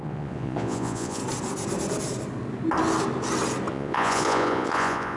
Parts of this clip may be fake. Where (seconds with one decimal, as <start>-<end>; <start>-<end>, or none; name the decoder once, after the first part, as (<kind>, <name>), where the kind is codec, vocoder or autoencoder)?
0.0-1.2 (vocoder, Vocos); 3.7-5.2